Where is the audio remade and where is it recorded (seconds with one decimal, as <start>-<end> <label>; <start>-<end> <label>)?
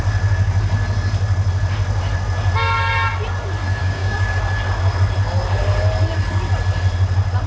0.0-3.8 recorded; 3.8-4.4 remade; 4.4-7.5 recorded